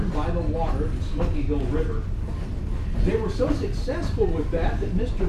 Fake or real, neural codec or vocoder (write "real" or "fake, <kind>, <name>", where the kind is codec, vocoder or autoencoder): real